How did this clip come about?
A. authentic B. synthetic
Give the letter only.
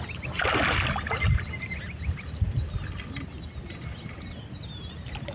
A